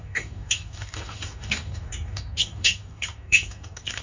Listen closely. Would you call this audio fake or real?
fake